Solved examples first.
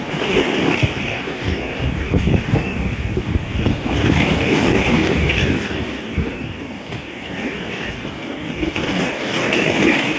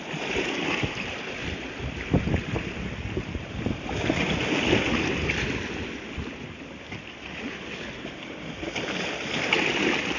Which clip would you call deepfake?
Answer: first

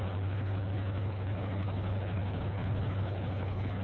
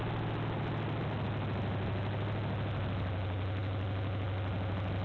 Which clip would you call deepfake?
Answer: first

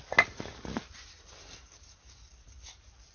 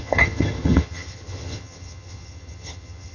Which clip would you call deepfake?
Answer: second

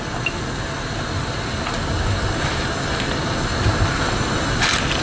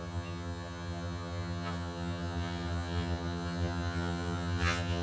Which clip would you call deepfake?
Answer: second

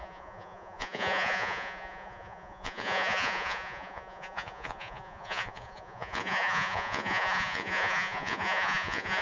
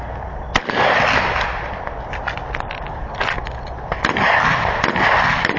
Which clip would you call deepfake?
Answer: first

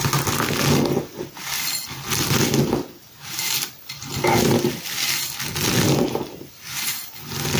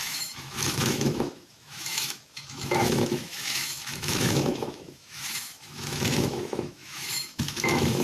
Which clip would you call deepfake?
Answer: second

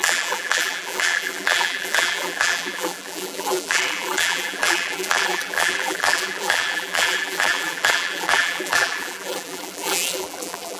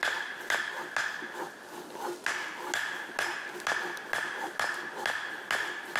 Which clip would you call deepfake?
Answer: first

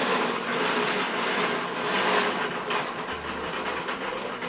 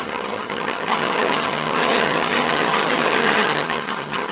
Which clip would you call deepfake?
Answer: second